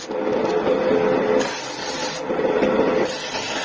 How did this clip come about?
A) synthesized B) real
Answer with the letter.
B